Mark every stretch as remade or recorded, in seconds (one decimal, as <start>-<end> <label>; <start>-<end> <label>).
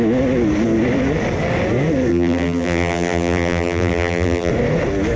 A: 0.0-2.1 recorded; 2.1-4.5 remade; 4.5-5.2 recorded